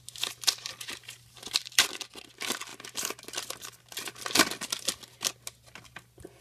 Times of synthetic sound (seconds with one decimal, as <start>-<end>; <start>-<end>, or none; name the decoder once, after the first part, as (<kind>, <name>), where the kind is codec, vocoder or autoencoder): 0.7-1.8 (vocoder, BigVGAN v2)